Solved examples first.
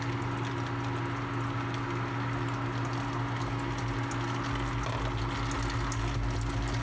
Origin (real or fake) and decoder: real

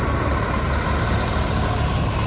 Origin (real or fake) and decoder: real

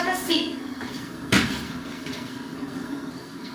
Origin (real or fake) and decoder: fake, codec, SNAC